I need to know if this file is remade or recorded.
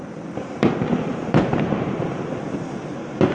remade